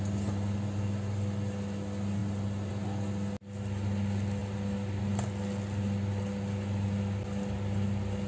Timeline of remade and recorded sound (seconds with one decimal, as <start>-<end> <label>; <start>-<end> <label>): 0.0-8.3 recorded